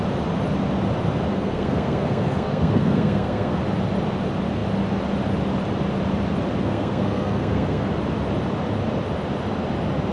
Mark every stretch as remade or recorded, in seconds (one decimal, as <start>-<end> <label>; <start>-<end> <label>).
0.0-1.3 recorded; 1.3-3.6 remade; 3.6-6.6 recorded; 6.6-7.9 remade; 7.9-10.1 recorded